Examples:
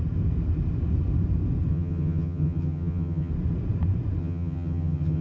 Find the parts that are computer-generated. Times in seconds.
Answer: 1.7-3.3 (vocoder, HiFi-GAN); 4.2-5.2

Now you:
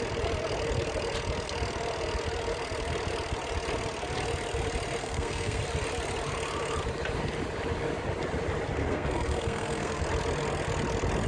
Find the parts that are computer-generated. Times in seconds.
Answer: 5.0-5.6 (codec, SNAC); 8.8-10.0